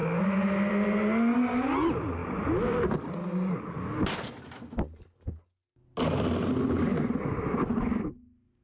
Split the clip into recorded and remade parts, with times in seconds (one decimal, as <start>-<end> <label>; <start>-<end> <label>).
0.0-8.6 recorded